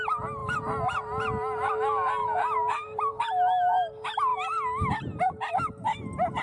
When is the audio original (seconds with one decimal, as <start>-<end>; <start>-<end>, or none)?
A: 0.0-0.4; 1.7-2.2; 3.1-6.4